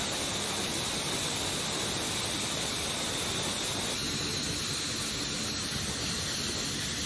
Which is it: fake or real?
real